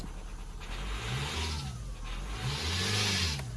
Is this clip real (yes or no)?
yes